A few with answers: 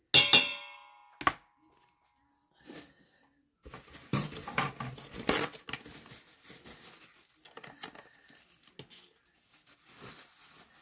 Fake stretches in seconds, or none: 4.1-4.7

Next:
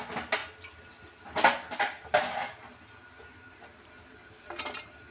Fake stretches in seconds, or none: none

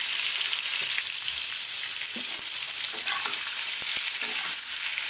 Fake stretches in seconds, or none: 0.8-3.9

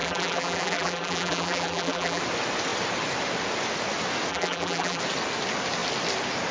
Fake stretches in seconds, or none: 0.0-2.2; 4.3-5.0

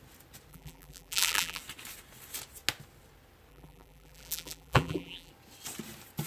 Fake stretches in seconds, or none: 0.5-1.6; 3.5-5.3

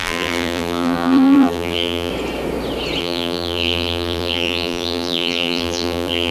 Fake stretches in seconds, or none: 0.0-2.1; 3.0-6.3

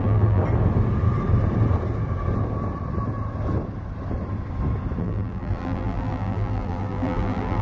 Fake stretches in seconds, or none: 0.0-0.4; 5.0-7.6

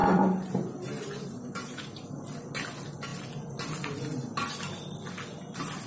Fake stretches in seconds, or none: 0.0-2.1